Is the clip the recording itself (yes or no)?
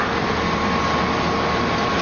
yes